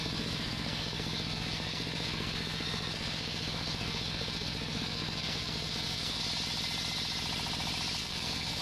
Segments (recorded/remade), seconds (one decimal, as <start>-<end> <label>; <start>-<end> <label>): 0.0-6.2 remade; 6.2-8.0 recorded; 8.0-8.6 remade

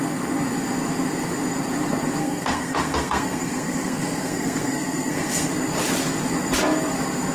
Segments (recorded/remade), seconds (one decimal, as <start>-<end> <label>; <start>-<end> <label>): 0.0-2.2 recorded; 2.2-5.5 remade; 5.5-7.3 recorded

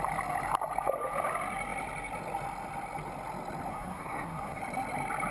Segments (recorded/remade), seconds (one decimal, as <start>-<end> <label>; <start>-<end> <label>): 0.0-3.7 recorded; 3.7-4.6 remade; 4.6-5.3 recorded

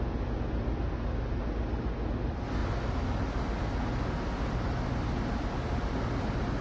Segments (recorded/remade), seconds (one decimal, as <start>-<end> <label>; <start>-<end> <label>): 0.0-6.6 recorded